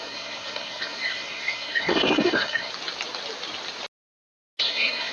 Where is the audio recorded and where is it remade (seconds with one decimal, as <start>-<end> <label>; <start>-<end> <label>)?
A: 0.0-2.7 remade; 2.7-4.6 recorded; 4.6-5.1 remade

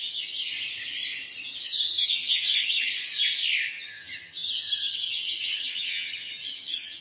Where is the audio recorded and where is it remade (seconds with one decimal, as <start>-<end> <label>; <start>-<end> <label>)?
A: 0.0-0.5 remade; 0.5-1.6 recorded; 1.6-2.9 remade; 2.9-3.7 recorded; 3.7-7.0 remade

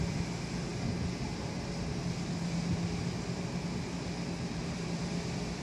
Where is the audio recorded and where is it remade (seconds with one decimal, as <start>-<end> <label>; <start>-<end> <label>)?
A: 0.0-5.6 recorded

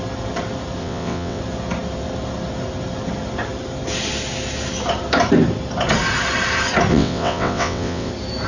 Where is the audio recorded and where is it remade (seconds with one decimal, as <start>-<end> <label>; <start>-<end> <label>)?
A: 0.0-0.8 recorded; 0.8-1.4 remade; 1.4-6.9 recorded; 6.9-8.1 remade; 8.1-8.5 recorded

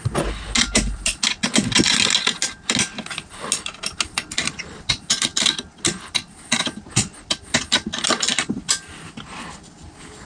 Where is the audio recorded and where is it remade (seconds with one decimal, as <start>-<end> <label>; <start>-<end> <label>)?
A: 0.0-10.3 recorded

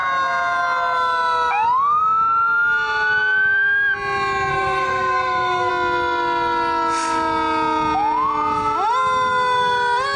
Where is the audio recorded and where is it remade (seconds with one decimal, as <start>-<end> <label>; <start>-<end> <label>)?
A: 0.0-4.5 recorded; 4.5-5.7 remade; 5.7-10.2 recorded

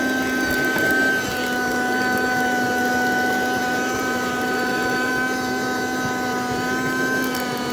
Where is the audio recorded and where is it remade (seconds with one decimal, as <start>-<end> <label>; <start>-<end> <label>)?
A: 0.0-3.6 recorded; 3.6-5.1 remade; 5.1-7.7 recorded

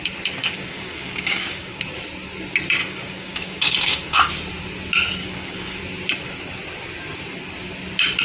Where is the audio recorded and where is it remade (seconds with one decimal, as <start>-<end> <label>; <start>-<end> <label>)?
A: 0.0-0.4 recorded; 0.4-1.8 remade; 1.8-2.8 recorded; 2.8-4.3 remade; 4.3-5.2 recorded; 5.2-5.8 remade; 5.8-8.2 recorded